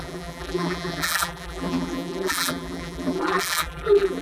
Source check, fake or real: fake